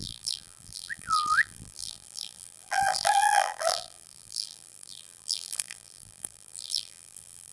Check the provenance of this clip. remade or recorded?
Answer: remade